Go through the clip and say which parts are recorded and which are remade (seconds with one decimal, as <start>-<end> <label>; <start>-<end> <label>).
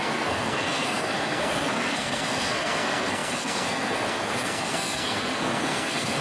0.0-6.2 remade